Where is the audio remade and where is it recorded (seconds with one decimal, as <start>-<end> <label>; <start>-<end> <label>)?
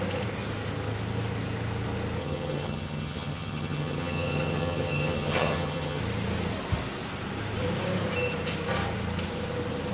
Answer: 0.0-2.2 recorded; 2.2-6.0 remade; 6.0-9.9 recorded